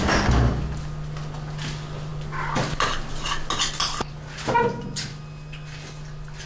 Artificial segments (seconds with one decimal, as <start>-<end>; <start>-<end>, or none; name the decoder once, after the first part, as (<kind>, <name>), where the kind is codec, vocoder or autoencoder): none